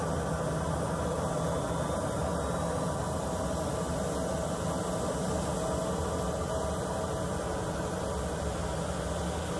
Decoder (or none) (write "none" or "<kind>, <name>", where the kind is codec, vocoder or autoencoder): none